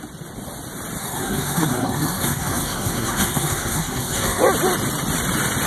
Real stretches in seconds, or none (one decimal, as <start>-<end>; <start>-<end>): 0.0-1.0; 4.4-5.7